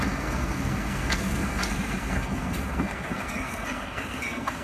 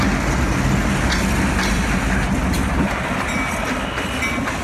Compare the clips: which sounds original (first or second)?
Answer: second